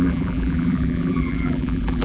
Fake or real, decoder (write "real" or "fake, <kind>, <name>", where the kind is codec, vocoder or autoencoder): fake, vocoder, BigVGAN v2